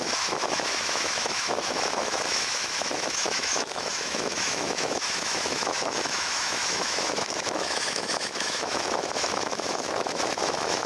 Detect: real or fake fake